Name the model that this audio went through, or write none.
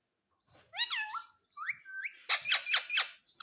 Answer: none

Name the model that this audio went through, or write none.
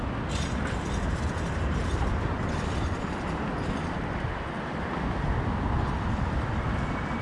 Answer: vocoder, BigVGAN v2